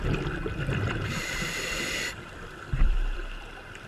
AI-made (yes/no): yes